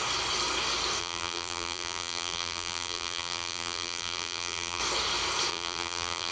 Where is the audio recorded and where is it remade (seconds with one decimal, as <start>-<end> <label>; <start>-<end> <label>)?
0.0-1.0 recorded; 1.0-4.8 remade; 4.8-5.5 recorded; 5.5-6.3 remade